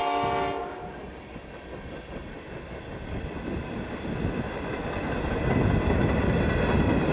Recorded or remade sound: recorded